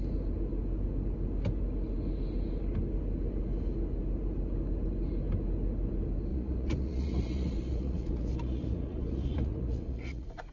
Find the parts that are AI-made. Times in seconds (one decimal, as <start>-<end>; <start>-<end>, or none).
6.3-10.5